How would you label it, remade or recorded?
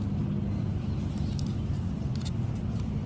recorded